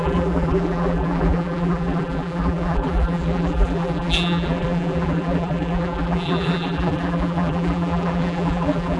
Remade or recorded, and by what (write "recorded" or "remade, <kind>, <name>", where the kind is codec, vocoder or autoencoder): remade, vocoder, BigVGAN v2